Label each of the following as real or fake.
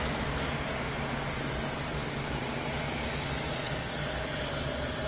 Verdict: real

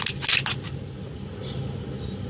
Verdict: real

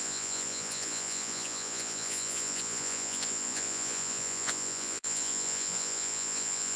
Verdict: fake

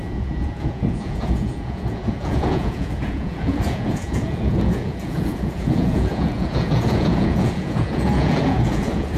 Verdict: fake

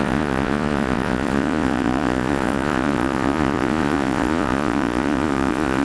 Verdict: fake